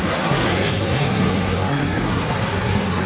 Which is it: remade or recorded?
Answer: remade